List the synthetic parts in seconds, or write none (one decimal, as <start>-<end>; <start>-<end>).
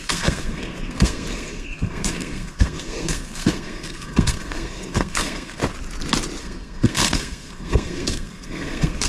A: 0.0-5.6; 6.4-9.1